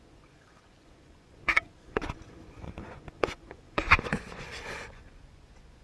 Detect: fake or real fake